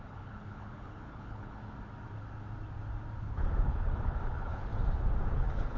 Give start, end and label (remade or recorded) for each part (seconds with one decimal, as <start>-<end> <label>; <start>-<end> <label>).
0.0-1.6 remade; 1.6-3.2 recorded; 3.2-4.7 remade; 4.7-5.3 recorded; 5.3-5.8 remade

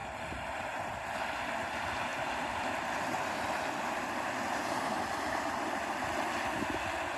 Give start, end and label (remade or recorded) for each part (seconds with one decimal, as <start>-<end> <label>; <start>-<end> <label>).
0.0-1.5 remade; 1.5-2.1 recorded; 2.1-6.4 remade; 6.4-7.2 recorded

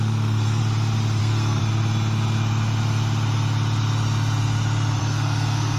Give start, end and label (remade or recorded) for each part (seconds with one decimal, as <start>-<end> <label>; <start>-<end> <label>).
0.0-0.6 remade; 0.6-1.2 recorded; 1.2-1.6 remade; 1.6-5.0 recorded; 5.0-5.8 remade

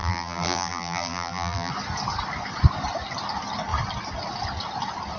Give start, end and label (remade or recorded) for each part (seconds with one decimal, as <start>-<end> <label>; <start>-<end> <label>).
0.0-1.7 remade; 1.7-5.2 recorded